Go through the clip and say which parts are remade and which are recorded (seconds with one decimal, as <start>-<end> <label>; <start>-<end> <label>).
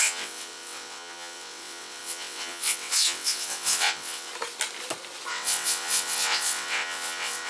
0.0-4.3 remade; 4.3-5.3 recorded; 5.3-7.5 remade